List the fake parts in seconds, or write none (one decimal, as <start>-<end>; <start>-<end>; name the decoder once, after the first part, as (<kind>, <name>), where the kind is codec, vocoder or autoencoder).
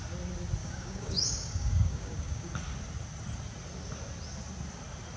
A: 0.6-2.5 (codec, DAC)